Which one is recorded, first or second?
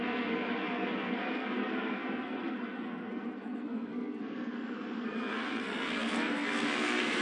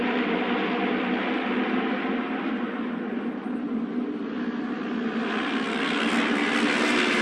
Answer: second